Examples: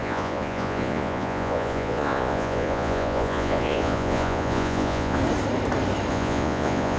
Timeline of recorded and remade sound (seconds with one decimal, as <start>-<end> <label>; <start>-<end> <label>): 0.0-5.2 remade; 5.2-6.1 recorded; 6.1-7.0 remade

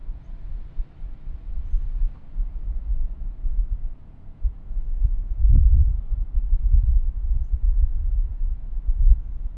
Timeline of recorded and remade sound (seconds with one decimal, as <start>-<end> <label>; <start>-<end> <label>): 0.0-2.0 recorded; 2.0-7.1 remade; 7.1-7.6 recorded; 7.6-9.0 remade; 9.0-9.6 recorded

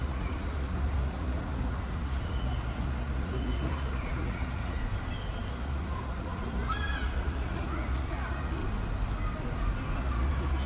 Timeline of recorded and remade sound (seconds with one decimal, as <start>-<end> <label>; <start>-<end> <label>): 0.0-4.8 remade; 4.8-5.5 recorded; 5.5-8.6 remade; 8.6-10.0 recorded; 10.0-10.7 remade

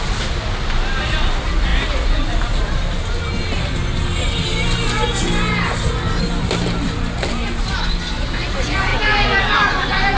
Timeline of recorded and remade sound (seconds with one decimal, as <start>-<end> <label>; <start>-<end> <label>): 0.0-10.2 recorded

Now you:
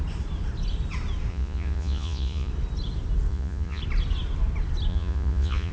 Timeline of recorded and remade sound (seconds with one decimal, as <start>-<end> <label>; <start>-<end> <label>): 0.0-1.3 recorded; 1.3-2.5 remade; 2.5-3.3 recorded; 3.3-3.8 remade; 3.8-4.9 recorded; 4.9-5.7 remade

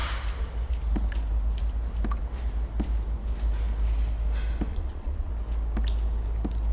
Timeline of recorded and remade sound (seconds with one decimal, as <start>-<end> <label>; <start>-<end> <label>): 0.0-4.7 recorded; 4.7-5.3 remade; 5.3-6.7 recorded

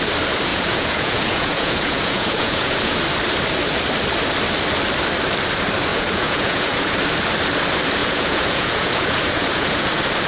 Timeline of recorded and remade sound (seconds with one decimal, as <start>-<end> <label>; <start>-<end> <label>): 0.0-0.5 recorded; 0.5-3.0 remade; 3.0-5.9 recorded; 5.9-6.9 remade; 6.9-8.0 recorded; 8.0-9.9 remade; 9.9-10.3 recorded